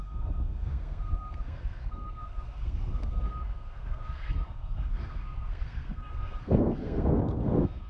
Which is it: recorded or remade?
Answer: remade